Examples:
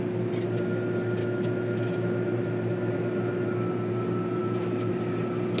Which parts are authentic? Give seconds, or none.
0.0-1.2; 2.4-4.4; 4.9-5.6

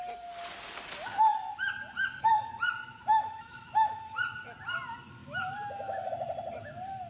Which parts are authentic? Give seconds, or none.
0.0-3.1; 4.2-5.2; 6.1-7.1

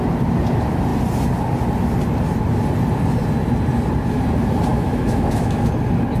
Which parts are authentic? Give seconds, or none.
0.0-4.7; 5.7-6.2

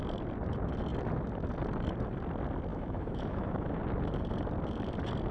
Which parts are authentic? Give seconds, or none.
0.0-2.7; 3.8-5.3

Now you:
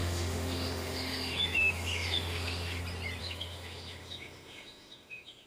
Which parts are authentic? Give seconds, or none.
2.8-3.2

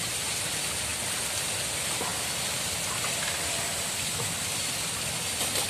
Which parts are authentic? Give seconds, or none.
0.0-5.7

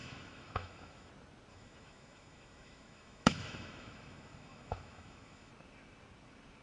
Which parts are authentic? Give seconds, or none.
1.1-1.5; 5.5-6.6